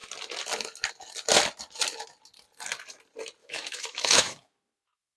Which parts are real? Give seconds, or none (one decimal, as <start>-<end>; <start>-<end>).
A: 0.0-3.4